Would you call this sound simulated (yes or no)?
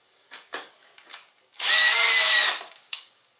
yes